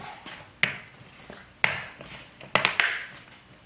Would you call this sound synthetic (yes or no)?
no